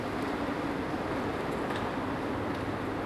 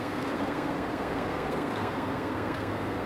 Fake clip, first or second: second